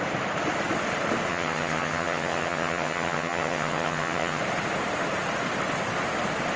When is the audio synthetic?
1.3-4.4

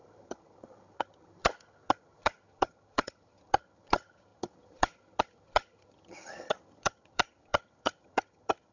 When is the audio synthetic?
0.0-8.7